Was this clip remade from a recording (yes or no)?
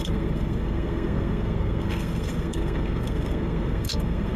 yes